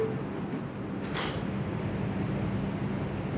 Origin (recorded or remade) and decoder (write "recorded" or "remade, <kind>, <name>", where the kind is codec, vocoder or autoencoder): recorded